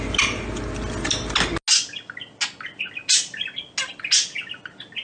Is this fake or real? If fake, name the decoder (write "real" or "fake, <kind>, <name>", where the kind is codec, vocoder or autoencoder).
real